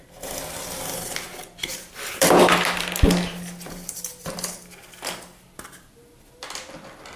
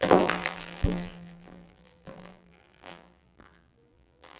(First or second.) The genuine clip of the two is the first